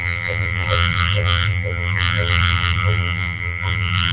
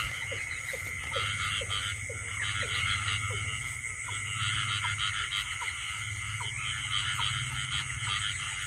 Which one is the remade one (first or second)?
first